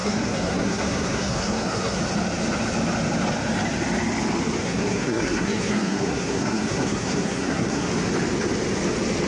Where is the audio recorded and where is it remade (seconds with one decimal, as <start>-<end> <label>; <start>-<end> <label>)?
0.0-2.0 remade; 2.0-4.6 recorded; 4.6-7.9 remade; 7.9-9.3 recorded